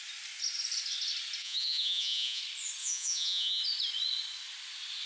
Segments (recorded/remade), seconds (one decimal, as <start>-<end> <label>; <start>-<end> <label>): 0.0-1.4 recorded; 1.4-2.4 remade; 2.4-2.8 recorded; 2.8-3.6 remade; 3.6-5.1 recorded